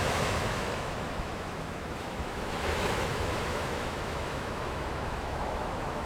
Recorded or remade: remade